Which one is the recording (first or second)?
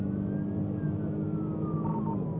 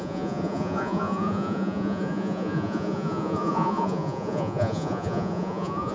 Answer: first